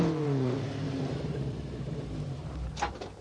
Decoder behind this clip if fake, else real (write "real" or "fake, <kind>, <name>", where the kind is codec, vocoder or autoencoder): fake, vocoder, BigVGAN v2